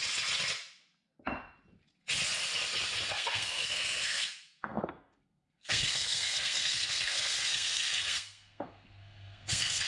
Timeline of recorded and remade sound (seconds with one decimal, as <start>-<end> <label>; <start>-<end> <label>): 0.0-3.1 recorded; 3.1-9.9 remade